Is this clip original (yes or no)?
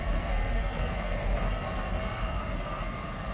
no